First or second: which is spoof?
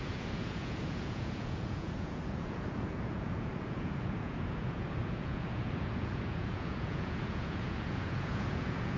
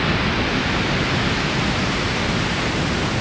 first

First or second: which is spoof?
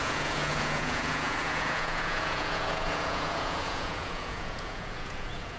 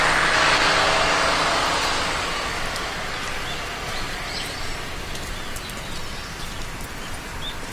first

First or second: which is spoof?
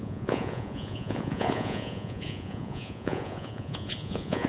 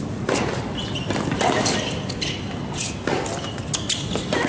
first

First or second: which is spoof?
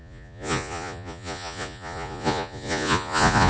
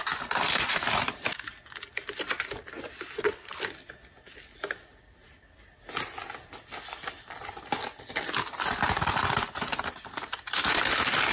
first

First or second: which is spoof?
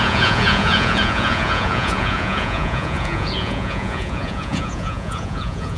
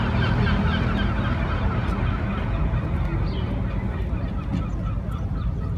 first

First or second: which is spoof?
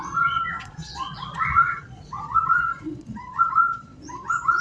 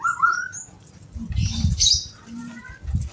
first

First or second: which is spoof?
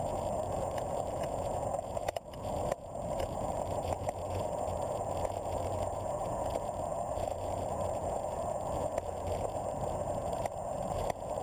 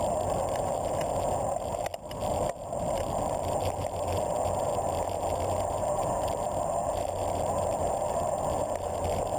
first